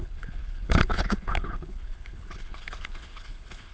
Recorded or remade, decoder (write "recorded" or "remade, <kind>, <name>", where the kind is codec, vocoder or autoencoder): remade, codec, HILCodec